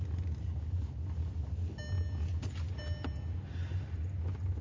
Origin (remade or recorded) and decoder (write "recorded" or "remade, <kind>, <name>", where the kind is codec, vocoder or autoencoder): recorded